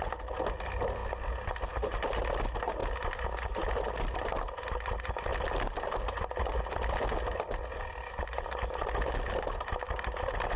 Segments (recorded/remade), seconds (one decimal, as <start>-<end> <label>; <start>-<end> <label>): 0.0-10.6 recorded